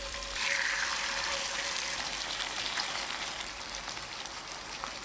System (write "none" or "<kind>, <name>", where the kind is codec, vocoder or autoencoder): vocoder, BigVGAN v2